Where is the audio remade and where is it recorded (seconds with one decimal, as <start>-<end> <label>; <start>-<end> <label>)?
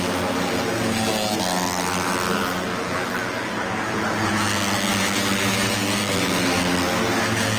0.0-7.6 recorded